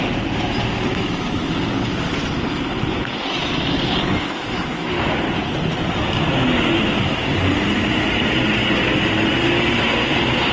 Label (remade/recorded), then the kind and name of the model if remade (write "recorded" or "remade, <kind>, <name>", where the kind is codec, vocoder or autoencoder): recorded